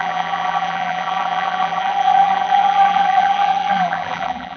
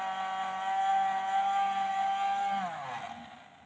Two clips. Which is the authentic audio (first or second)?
second